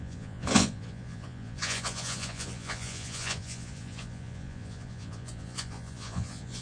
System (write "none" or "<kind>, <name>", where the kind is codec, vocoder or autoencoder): vocoder, Vocos